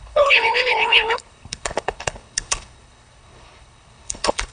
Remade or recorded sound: remade